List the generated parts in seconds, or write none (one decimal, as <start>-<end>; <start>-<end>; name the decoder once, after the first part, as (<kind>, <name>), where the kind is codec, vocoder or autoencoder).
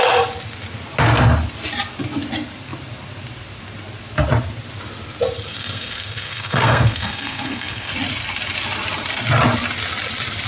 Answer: 5.5-7.9 (codec, SNAC)